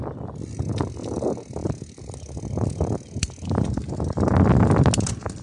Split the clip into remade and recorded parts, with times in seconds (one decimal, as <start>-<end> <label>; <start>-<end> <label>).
0.0-5.4 recorded